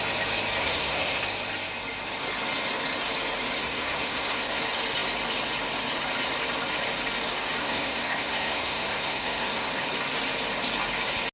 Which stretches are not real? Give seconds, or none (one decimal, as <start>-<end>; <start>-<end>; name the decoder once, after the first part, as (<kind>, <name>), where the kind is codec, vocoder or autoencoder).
0.6-1.2 (codec, SNAC); 3.6-4.6; 7.6-9.7